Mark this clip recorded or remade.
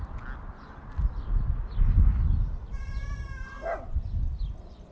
recorded